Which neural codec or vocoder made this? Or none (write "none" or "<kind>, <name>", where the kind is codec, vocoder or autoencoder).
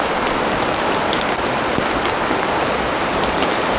vocoder, BigVGAN v2